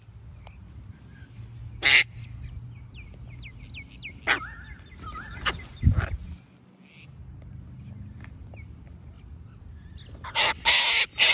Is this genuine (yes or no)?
yes